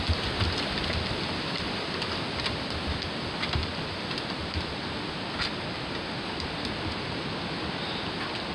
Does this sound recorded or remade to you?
recorded